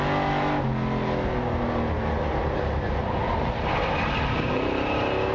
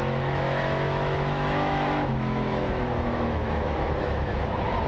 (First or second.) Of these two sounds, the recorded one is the first